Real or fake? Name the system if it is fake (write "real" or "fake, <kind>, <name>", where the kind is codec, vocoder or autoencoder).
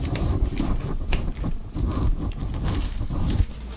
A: real